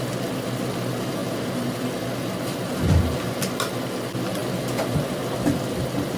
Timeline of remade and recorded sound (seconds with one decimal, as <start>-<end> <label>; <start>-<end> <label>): 0.0-6.2 recorded